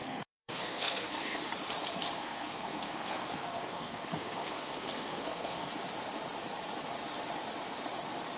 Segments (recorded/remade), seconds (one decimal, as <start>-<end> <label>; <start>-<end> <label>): 0.0-1.4 remade; 1.4-2.2 recorded; 2.2-5.7 remade; 5.7-8.4 recorded